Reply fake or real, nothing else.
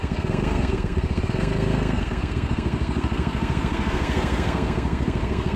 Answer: fake